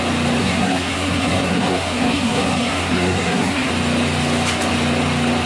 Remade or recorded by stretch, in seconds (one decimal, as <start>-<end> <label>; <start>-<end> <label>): 0.0-0.4 recorded; 0.4-3.7 remade; 3.7-5.5 recorded